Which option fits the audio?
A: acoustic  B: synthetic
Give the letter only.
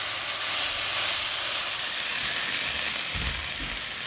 A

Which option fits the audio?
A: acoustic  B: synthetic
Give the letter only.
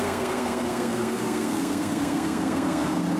B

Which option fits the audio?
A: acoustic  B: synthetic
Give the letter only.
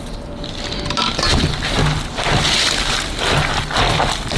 A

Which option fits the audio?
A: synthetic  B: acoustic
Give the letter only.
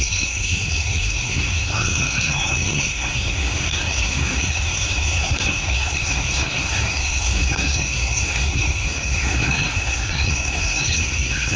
A